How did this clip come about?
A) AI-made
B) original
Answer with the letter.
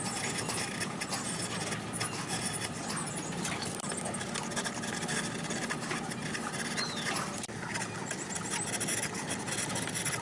B